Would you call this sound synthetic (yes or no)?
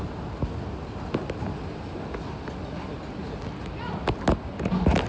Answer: no